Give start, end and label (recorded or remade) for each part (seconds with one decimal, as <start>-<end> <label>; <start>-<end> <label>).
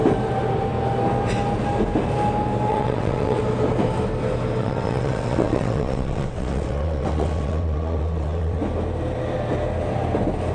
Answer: 0.0-2.7 recorded; 2.7-3.4 remade; 3.4-4.6 recorded; 4.6-8.6 remade; 8.6-10.5 recorded